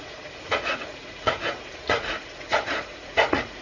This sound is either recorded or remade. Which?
remade